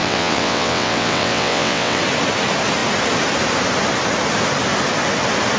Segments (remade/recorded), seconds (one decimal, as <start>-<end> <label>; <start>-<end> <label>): 0.0-2.0 remade; 2.0-5.6 recorded